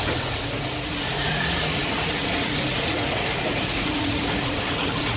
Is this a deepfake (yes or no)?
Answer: yes